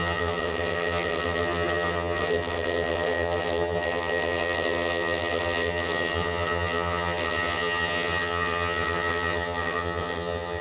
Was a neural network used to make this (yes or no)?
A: yes